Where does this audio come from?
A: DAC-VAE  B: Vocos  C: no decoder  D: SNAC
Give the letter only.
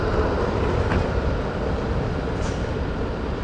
C